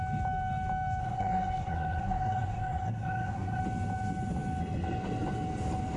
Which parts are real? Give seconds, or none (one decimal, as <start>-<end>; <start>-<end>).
0.0-1.0; 3.6-6.0